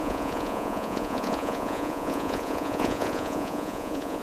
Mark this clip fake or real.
fake